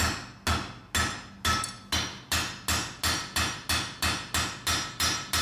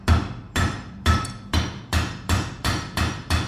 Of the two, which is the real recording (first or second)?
first